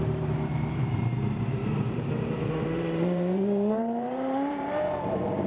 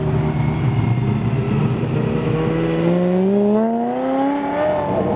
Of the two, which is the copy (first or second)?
first